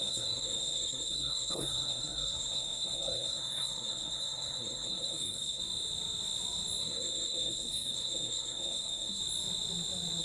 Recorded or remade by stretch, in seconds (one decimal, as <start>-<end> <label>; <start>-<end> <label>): 0.0-5.6 remade; 5.6-6.8 recorded; 6.8-9.2 remade; 9.2-10.2 recorded